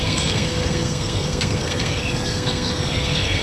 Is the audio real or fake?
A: fake